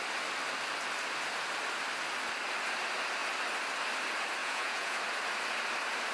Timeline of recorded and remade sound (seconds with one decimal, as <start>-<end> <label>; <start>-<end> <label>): 0.0-4.4 recorded; 4.4-5.0 remade; 5.0-6.1 recorded